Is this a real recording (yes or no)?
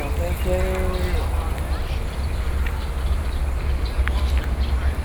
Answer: yes